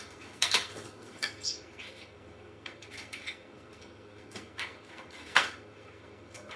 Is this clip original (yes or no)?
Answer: no